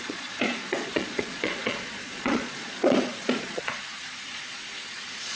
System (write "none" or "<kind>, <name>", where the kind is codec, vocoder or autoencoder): vocoder, Vocos